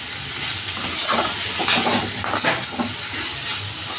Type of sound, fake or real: real